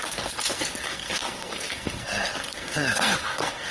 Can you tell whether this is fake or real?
fake